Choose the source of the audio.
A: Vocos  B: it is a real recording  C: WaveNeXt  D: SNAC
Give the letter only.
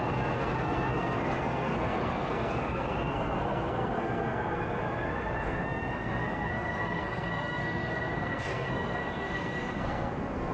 D